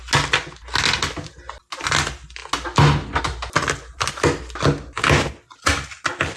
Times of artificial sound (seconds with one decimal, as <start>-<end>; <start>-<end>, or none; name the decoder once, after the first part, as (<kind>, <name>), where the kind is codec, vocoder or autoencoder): none